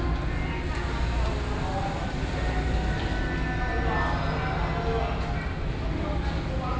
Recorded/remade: recorded